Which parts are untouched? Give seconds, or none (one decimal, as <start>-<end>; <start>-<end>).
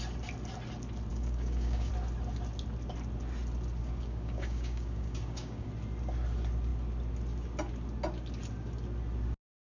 0.0-1.1; 1.9-3.8; 5.7-9.7